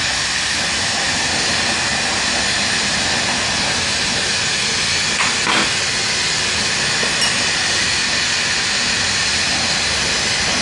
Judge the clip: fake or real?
real